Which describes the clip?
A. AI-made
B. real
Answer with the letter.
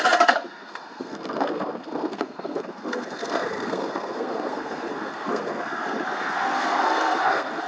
A